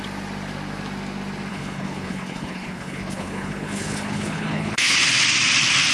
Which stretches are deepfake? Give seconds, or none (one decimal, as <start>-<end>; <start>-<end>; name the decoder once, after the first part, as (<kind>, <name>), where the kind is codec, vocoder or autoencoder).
1.5-5.0 (codec, HILCodec)